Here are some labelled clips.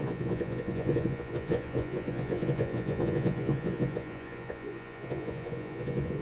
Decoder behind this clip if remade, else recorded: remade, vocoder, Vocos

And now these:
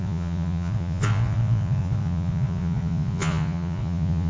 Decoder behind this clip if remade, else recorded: remade, vocoder, Vocos